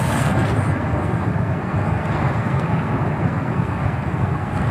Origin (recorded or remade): remade